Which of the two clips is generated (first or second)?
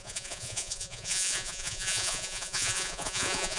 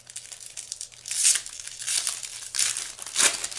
first